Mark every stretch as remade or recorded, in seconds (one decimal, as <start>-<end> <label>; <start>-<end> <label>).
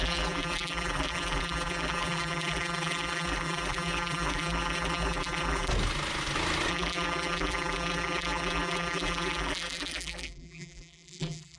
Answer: 0.0-5.7 remade; 5.7-6.7 recorded; 6.7-11.6 remade